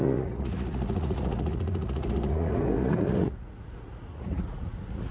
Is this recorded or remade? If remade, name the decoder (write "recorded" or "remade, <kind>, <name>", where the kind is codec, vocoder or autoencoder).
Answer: remade, vocoder, Vocos